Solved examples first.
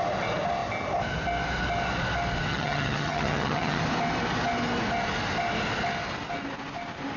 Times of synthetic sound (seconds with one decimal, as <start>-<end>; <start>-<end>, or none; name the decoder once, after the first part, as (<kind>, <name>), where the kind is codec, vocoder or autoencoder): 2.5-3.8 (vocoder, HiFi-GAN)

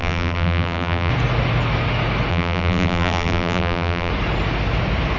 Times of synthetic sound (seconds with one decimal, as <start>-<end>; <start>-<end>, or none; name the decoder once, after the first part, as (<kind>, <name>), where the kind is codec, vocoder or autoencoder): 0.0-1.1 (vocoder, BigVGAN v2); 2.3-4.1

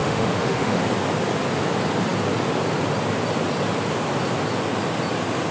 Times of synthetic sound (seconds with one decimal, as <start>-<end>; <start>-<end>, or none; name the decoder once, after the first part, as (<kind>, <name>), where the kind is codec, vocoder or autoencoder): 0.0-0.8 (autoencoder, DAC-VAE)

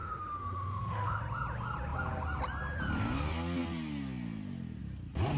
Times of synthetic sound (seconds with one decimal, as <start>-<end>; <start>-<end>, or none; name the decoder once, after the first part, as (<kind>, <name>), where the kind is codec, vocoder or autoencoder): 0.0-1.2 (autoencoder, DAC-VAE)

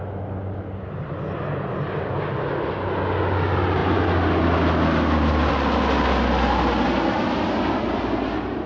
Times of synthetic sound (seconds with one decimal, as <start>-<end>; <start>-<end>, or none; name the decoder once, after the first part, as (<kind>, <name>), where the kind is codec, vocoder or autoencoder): none

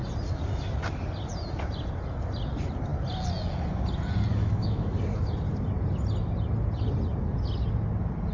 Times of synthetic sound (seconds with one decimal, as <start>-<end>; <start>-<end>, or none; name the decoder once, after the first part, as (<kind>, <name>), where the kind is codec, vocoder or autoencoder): 4.3-4.9 (autoencoder, DAC-VAE)

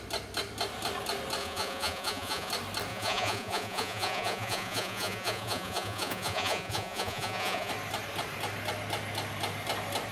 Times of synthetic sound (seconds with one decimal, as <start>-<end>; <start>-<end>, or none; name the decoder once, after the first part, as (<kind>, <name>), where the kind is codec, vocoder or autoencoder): 1.4-2.5 (vocoder, Vocos); 2.9-7.7